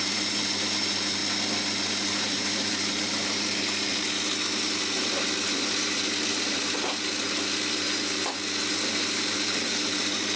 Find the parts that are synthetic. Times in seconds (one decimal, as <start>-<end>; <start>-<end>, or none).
0.0-1.2; 1.9-3.9; 8.7-10.4